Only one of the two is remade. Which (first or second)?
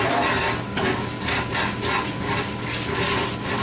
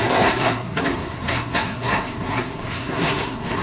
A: second